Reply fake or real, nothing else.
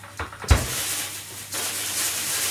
real